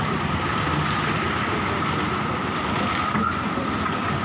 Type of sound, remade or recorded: recorded